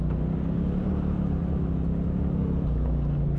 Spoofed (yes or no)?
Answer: no